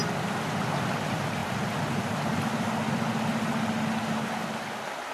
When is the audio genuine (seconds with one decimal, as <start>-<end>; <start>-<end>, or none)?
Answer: 0.0-5.1

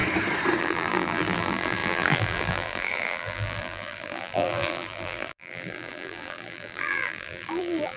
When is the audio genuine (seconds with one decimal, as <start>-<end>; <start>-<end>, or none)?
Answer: 0.0-0.6

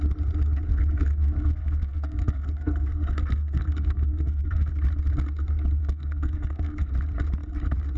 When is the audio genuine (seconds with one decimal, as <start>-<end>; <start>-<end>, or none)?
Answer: 0.0-0.7; 4.7-5.8; 6.9-8.0

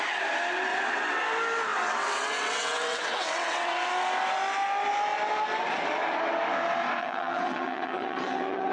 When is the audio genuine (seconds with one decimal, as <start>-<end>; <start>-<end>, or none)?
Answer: 0.0-0.7; 1.2-1.7; 3.9-7.0

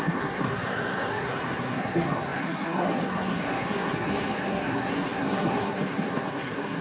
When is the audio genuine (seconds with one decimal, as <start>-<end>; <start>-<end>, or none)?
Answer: none

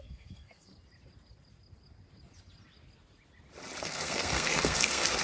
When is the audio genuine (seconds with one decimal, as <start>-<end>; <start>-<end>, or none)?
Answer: 0.7-3.8